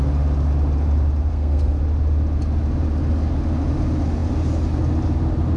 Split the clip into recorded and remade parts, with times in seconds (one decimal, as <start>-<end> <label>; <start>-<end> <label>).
0.0-1.3 recorded; 1.3-1.8 remade; 1.8-5.6 recorded

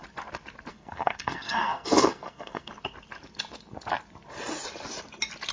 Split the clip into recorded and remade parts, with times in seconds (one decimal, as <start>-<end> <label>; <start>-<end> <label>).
0.0-0.7 recorded; 0.7-2.7 remade; 2.7-5.5 recorded